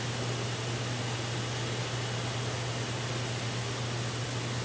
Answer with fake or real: real